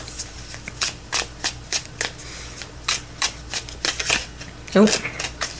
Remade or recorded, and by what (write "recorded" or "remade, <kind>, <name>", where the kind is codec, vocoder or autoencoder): recorded